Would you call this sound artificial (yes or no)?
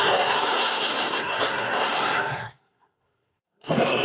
yes